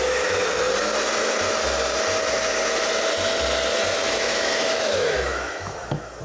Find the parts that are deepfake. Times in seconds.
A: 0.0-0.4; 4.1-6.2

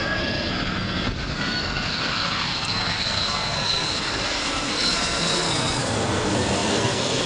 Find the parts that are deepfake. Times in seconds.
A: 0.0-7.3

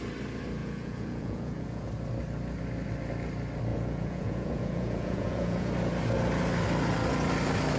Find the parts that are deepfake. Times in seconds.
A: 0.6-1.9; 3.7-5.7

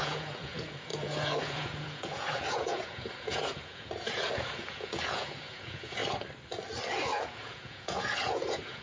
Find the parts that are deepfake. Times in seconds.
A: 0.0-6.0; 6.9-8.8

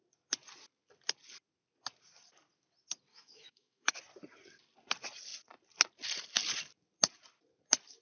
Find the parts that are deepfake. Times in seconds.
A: 3.1-3.9

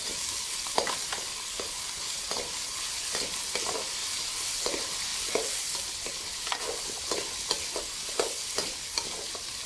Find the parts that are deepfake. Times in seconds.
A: none